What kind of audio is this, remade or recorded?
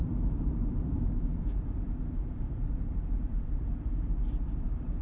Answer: remade